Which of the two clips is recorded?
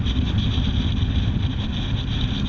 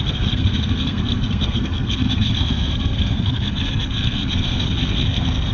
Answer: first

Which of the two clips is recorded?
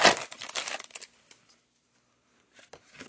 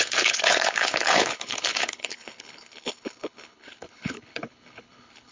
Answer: first